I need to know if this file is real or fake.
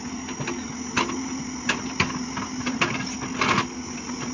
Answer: real